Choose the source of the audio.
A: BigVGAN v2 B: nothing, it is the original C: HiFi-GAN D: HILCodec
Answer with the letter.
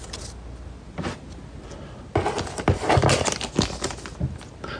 B